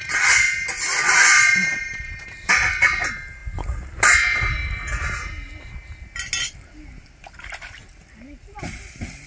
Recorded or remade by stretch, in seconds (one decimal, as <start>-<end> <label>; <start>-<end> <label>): 0.0-9.3 recorded